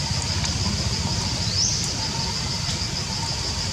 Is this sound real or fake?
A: real